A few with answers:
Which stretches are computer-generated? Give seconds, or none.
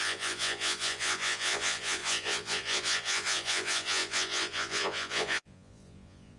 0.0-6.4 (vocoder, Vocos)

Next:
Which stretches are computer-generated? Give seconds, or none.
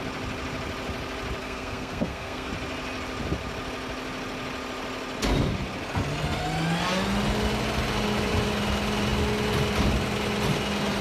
1.4-2.5 (codec, SNAC)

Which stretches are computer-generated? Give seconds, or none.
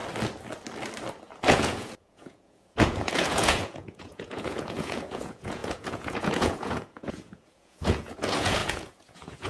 1.5-9.5 (vocoder, Vocos)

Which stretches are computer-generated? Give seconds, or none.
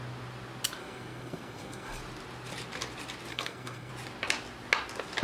0.8-2.0 (codec, SNAC); 3.3-3.9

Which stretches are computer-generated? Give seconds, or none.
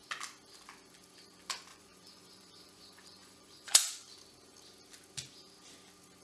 1.7-3.9 (vocoder, Vocos)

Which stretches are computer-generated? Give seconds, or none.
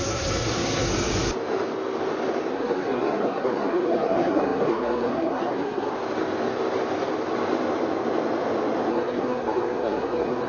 0.0-0.9 (codec, SNAC); 2.5-5.9; 8.9-10.5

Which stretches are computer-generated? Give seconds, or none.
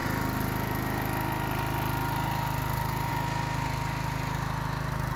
none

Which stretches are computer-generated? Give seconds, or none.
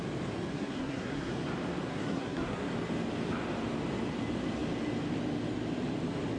0.5-1.3 (codec, SNAC); 1.9-2.7